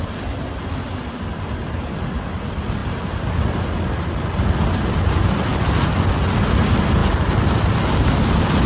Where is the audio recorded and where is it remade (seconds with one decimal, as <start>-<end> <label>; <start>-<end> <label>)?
0.0-8.7 recorded